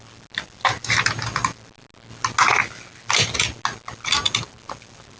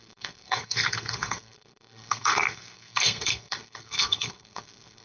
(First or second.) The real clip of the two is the first